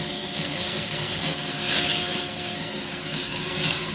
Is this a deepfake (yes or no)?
yes